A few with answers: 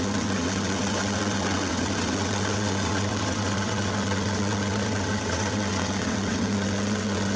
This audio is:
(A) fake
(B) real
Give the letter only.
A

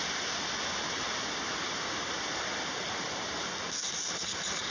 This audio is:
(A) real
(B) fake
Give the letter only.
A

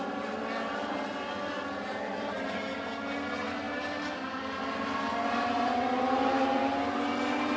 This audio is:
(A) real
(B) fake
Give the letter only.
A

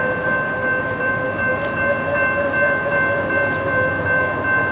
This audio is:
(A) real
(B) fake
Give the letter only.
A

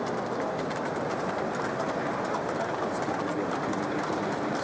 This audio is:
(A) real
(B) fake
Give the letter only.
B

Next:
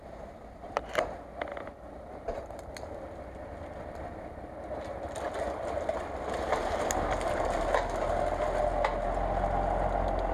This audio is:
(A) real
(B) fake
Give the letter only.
A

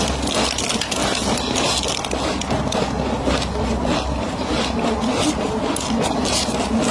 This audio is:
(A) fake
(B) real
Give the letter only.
B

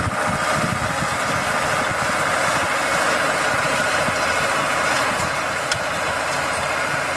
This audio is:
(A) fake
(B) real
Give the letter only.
B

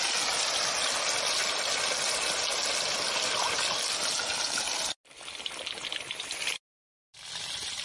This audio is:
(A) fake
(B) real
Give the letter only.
B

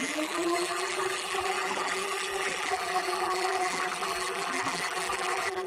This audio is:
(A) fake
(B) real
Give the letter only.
A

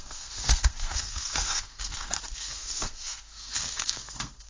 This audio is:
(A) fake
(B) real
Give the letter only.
A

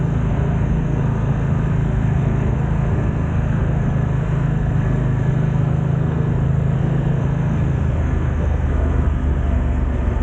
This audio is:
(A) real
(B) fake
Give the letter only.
B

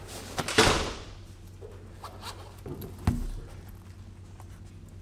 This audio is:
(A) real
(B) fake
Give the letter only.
A